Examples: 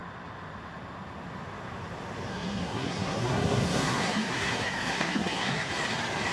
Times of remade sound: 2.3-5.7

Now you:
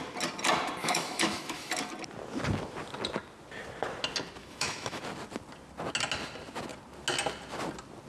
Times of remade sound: 0.8-1.7; 4.4-5.0

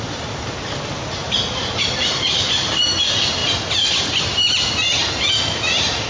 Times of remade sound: none

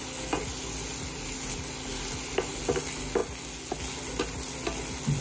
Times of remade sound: none